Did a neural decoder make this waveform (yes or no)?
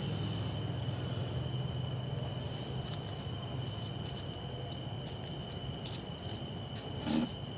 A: no